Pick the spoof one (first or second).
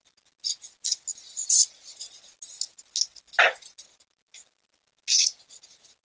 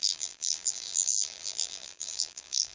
second